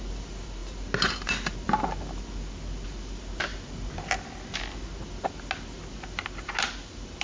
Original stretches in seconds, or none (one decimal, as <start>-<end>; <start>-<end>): 0.0-7.2